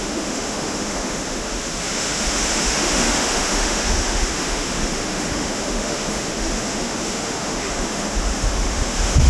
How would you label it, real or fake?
fake